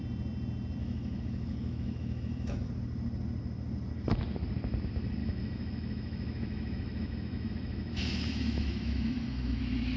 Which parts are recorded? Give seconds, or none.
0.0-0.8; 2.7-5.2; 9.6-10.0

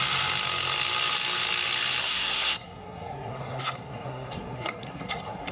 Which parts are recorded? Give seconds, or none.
0.0-2.0

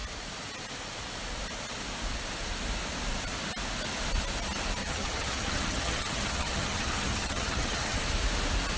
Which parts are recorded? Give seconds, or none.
0.0-4.8; 8.0-8.8

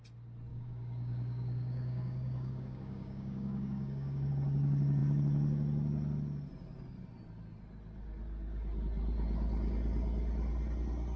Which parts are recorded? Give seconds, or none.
0.0-0.5; 4.3-11.2

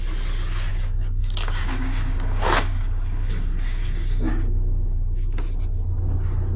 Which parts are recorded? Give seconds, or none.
0.0-0.7; 4.3-6.6

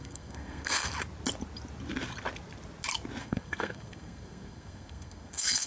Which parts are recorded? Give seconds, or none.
0.9-3.2

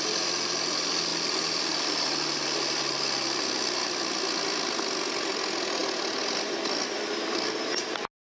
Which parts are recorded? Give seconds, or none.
0.0-8.3

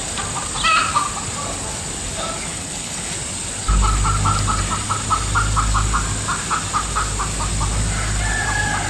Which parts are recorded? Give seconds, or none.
0.0-2.5; 3.1-8.9